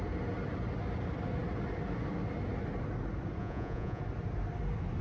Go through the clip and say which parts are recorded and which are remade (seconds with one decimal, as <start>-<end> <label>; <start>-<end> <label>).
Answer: 0.0-3.4 recorded; 3.4-4.0 remade; 4.0-5.0 recorded